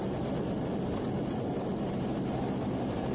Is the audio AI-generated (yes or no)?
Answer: no